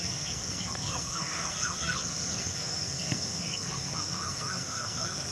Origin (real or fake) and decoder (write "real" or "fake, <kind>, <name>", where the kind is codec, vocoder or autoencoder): fake, codec, SNAC